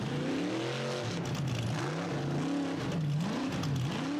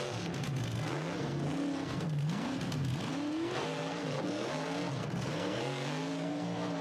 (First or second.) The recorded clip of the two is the first